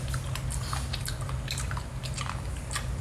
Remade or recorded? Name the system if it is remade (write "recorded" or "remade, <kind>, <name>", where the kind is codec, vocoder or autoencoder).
recorded